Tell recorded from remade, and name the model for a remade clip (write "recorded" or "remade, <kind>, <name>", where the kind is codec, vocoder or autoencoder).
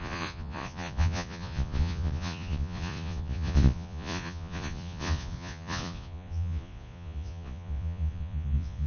remade, vocoder, Vocos